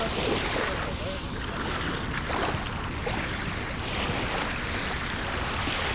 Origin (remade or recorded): recorded